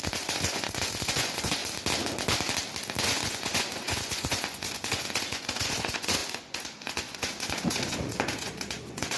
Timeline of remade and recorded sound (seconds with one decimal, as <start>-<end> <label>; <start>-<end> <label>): 0.0-1.6 remade; 1.6-3.0 recorded; 3.0-9.2 remade